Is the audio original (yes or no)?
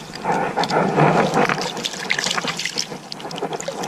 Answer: yes